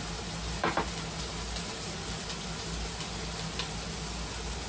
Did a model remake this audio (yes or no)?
no